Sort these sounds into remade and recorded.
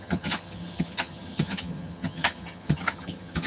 remade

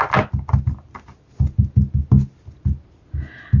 recorded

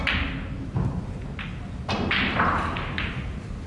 recorded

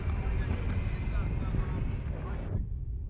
recorded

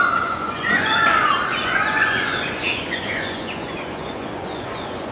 remade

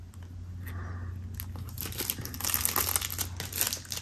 recorded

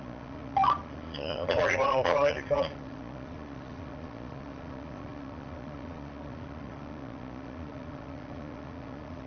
remade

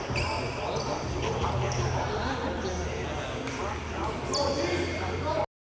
recorded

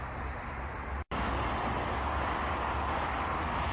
recorded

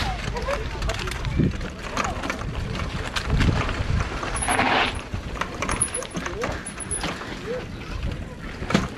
remade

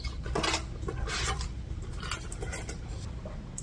recorded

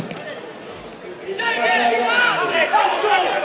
recorded